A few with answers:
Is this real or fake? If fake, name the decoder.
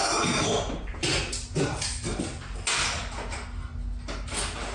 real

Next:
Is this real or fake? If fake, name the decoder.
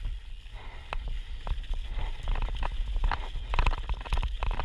real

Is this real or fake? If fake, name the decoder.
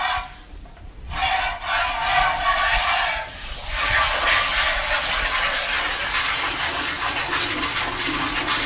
real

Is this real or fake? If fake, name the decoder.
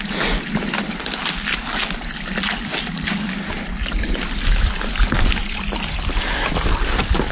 real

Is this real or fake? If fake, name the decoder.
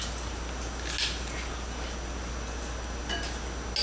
real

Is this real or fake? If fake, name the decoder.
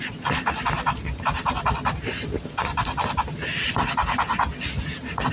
real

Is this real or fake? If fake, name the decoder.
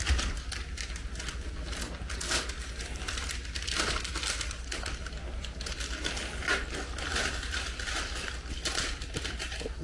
real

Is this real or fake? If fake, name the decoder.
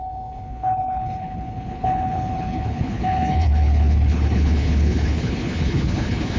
fake, codec, HILCodec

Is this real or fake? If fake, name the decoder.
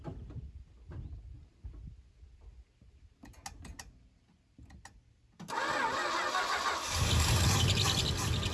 real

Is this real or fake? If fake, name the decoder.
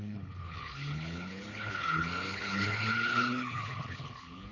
fake, codec, HILCodec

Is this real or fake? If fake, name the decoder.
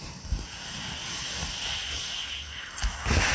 real